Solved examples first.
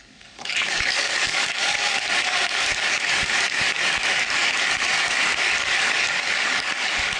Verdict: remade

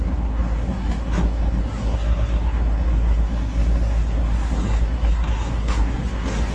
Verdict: remade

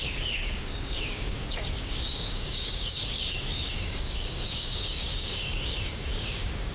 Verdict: remade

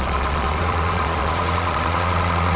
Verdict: remade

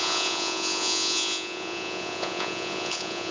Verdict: remade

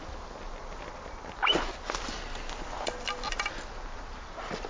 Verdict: recorded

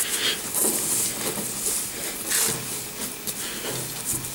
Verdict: recorded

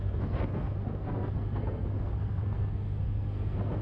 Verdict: remade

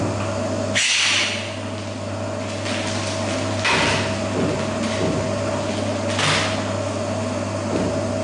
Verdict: recorded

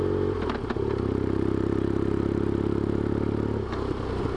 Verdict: recorded